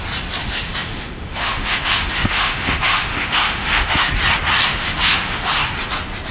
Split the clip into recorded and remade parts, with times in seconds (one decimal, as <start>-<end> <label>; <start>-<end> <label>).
0.0-0.4 recorded; 0.4-4.1 remade; 4.1-4.7 recorded; 4.7-5.6 remade; 5.6-6.3 recorded